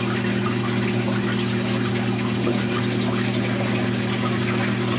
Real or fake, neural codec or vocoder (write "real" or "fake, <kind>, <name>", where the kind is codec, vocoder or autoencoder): real